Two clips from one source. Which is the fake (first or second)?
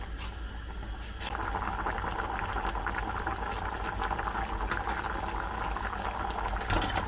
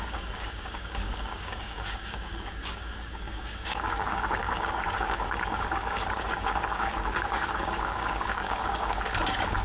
second